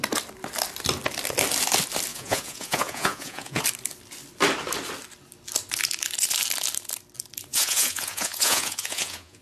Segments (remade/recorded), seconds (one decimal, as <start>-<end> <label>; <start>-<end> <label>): 0.0-2.1 recorded; 2.1-3.6 remade; 3.6-7.5 recorded; 7.5-9.4 remade

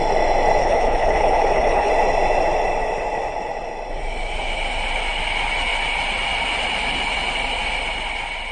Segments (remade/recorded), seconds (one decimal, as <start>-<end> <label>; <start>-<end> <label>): 0.0-0.6 recorded; 0.6-1.9 remade; 1.9-8.5 recorded

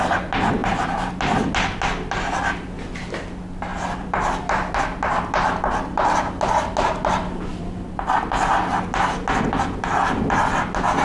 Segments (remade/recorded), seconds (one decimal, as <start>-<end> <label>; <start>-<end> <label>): 0.0-3.7 recorded; 3.7-4.7 remade; 4.7-7.5 recorded; 7.5-8.1 remade; 8.1-11.0 recorded

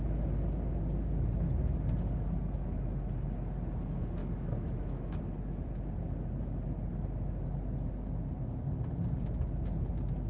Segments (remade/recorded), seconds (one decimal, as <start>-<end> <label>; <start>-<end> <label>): 0.0-4.2 recorded; 4.2-5.7 remade; 5.7-10.3 recorded

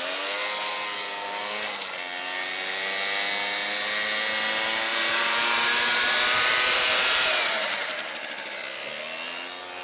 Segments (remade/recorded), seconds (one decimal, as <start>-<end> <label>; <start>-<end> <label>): 0.0-4.9 recorded; 4.9-7.3 remade; 7.3-9.8 recorded